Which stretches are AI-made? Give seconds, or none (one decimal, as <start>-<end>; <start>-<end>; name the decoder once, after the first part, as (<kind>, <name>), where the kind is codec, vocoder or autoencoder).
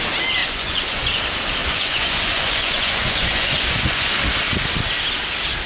0.4-1.2 (vocoder, Vocos); 1.6-4.1